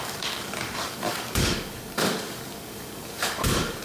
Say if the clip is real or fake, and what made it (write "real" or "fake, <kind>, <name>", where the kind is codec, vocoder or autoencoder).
fake, codec, DAC